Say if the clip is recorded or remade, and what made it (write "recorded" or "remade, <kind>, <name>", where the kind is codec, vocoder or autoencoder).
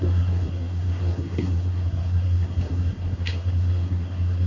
remade, codec, SNAC